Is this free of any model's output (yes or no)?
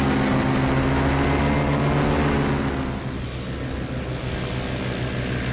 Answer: yes